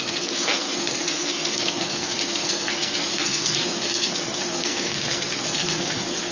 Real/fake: fake